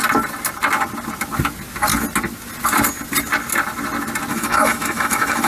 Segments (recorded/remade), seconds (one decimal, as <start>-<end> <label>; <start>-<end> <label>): 0.0-4.3 recorded; 4.3-5.5 remade